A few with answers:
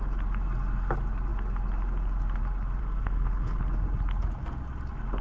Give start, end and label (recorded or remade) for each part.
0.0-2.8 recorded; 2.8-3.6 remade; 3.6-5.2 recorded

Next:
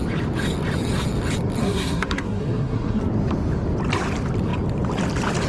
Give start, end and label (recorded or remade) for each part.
0.0-1.6 recorded; 1.6-3.0 remade; 3.0-5.5 recorded

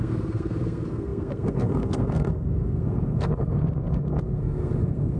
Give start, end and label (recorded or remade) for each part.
0.0-5.2 remade